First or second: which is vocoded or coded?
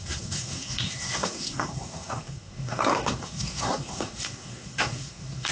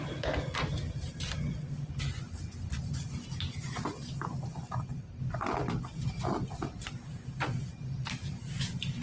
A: first